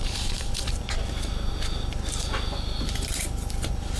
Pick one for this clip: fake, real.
fake